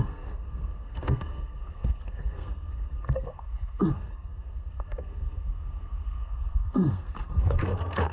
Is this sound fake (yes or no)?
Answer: yes